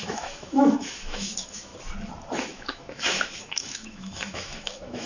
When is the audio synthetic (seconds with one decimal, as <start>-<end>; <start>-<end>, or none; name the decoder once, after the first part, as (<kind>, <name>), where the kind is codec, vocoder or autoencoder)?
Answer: 0.0-1.7 (autoencoder, DAC-VAE); 2.3-5.1